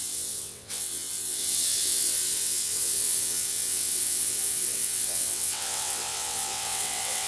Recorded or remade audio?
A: remade